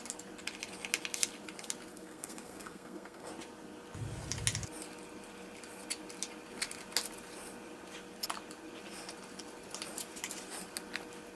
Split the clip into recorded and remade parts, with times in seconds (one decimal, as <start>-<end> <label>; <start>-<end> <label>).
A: 0.0-1.9 recorded; 1.9-3.3 remade; 3.3-11.4 recorded

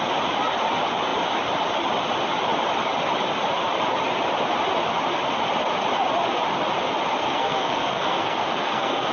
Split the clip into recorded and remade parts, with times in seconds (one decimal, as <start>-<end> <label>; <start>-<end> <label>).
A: 0.0-7.2 recorded; 7.2-9.1 remade